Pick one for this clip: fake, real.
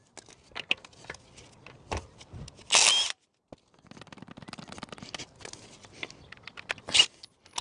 real